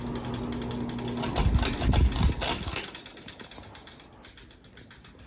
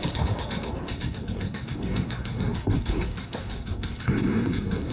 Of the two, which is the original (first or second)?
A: first